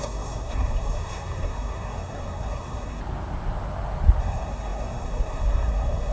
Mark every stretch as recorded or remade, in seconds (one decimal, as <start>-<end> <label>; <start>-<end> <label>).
0.0-3.0 remade; 3.0-4.2 recorded; 4.2-6.1 remade

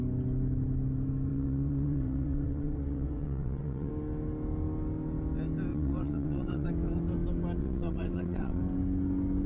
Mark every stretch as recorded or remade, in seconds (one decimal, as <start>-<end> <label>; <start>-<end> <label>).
0.0-1.3 recorded; 1.3-3.9 remade; 3.9-5.7 recorded; 5.7-6.7 remade; 6.7-7.6 recorded; 7.6-8.6 remade; 8.6-9.5 recorded

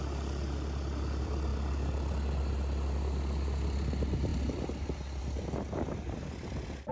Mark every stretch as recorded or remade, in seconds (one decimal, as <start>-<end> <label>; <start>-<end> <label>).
0.0-6.9 recorded

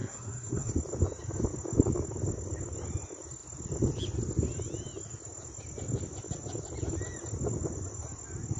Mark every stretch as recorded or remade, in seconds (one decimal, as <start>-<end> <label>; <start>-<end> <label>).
0.0-0.7 remade; 0.7-8.6 recorded

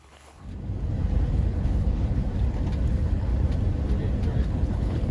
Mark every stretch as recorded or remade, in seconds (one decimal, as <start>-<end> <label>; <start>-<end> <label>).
0.0-0.5 remade; 0.5-1.3 recorded; 1.3-2.2 remade; 2.2-2.9 recorded; 2.9-3.3 remade; 3.3-4.4 recorded; 4.4-5.1 remade

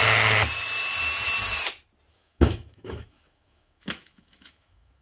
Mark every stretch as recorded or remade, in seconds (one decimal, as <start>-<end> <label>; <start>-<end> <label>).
0.0-2.1 recorded; 2.1-5.0 remade